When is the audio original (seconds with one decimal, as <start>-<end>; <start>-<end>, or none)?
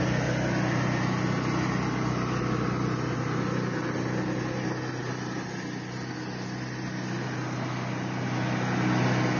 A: 0.0-9.4